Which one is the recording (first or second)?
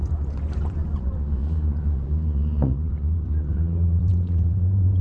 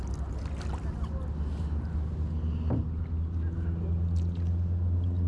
second